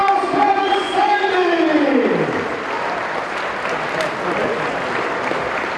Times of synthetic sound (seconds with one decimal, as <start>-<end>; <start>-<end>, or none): 0.0-1.8